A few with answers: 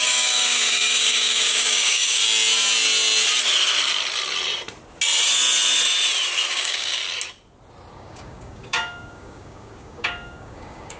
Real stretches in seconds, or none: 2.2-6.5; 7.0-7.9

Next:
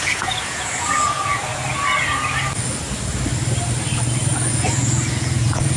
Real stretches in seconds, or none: 1.5-4.5

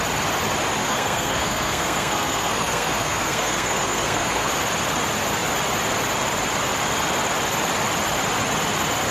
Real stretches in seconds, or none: 0.0-0.8; 4.5-9.1